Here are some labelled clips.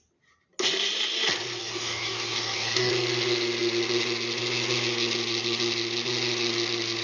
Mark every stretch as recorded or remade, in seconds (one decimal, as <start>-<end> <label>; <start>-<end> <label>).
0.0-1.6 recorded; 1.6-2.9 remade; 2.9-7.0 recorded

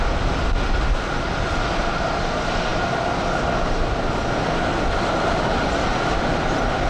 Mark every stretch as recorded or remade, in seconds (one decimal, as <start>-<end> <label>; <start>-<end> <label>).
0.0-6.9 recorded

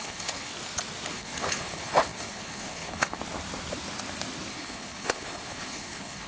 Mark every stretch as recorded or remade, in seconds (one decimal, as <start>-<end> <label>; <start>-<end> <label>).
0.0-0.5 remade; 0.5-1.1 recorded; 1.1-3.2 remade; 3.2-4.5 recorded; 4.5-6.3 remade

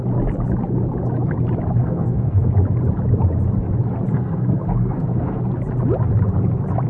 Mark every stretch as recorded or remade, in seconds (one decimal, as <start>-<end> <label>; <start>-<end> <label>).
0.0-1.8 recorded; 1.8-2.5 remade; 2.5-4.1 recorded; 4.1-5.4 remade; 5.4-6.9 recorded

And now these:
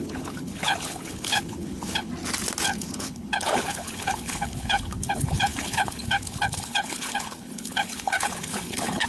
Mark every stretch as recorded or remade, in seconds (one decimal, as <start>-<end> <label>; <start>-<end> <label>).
0.0-2.1 remade; 2.1-2.6 recorded; 2.6-9.1 remade

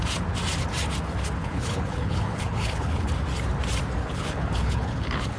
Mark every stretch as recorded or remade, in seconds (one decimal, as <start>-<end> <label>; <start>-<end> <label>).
0.0-1.4 recorded; 1.4-3.1 remade; 3.1-4.0 recorded; 4.0-5.4 remade

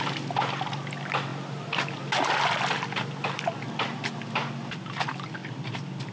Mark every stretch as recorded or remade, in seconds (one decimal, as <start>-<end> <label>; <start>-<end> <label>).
0.0-6.1 recorded

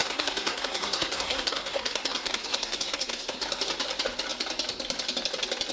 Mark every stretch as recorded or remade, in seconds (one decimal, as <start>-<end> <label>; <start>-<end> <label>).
0.0-3.4 remade; 3.4-5.7 recorded